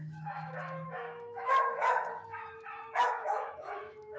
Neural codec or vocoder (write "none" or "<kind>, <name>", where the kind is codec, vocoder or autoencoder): autoencoder, DAC-VAE